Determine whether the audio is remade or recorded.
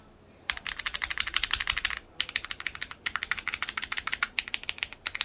recorded